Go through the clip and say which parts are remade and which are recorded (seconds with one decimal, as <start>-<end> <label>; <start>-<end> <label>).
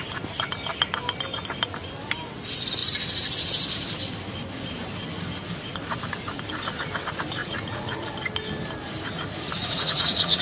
0.0-7.4 recorded; 7.4-8.1 remade; 8.1-9.6 recorded; 9.6-10.4 remade